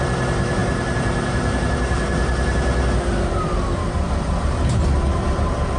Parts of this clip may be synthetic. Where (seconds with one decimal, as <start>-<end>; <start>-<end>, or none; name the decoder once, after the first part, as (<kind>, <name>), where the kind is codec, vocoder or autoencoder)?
0.0-5.8 (vocoder, BigVGAN v2)